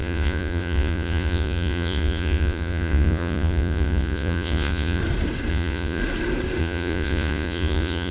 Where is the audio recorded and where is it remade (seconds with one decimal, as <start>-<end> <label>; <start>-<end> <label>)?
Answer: 0.0-5.0 remade; 5.0-5.5 recorded; 5.5-6.0 remade; 6.0-6.6 recorded; 6.6-8.1 remade

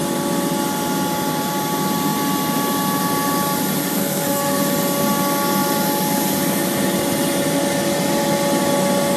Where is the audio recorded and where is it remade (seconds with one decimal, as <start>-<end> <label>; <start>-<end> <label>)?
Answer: 0.0-4.0 recorded; 4.0-4.6 remade; 4.6-9.2 recorded

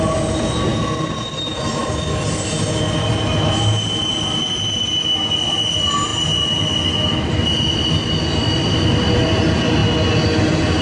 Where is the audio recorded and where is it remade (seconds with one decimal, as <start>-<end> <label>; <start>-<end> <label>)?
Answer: 0.0-10.8 recorded

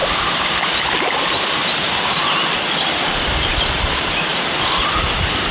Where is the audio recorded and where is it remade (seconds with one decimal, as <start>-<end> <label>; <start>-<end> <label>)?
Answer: 0.0-1.1 recorded; 1.1-1.6 remade; 1.6-3.5 recorded; 3.5-5.5 remade

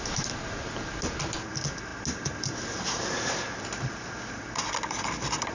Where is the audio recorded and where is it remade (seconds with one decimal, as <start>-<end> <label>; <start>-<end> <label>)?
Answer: 0.0-5.5 recorded